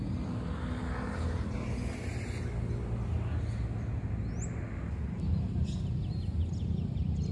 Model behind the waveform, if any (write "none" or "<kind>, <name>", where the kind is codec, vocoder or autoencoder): none